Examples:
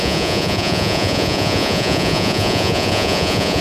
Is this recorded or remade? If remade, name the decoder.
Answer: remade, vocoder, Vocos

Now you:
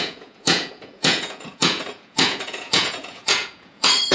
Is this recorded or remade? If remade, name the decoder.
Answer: remade, vocoder, Vocos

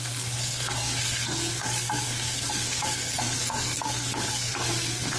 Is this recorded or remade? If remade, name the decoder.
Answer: remade, codec, SNAC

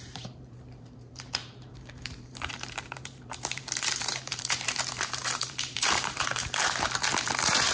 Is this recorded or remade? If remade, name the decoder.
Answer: remade, vocoder, BigVGAN v2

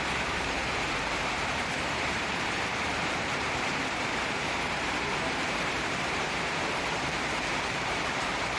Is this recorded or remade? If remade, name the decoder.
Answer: remade, vocoder, BigVGAN v2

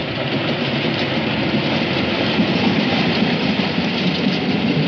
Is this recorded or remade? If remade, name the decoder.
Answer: recorded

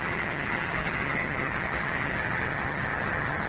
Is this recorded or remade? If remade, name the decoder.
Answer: remade, vocoder, HiFi-GAN